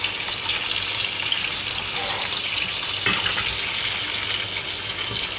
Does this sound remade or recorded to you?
recorded